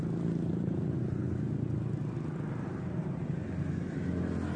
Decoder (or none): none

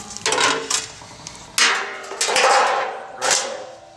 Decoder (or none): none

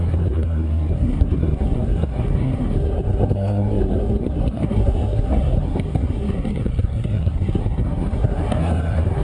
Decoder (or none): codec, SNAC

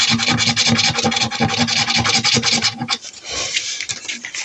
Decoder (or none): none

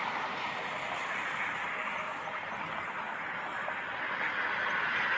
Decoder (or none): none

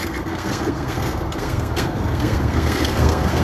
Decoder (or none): codec, SNAC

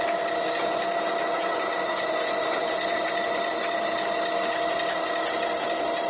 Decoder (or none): none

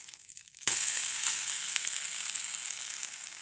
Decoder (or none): codec, SNAC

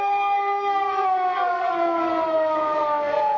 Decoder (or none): codec, SNAC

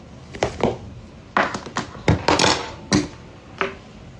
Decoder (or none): none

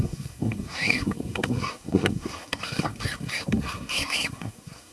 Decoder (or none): codec, SNAC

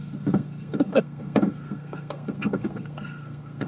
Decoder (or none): codec, SNAC